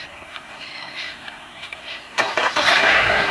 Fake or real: fake